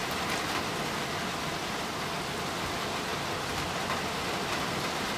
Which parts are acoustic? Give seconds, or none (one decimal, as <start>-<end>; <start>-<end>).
0.0-5.2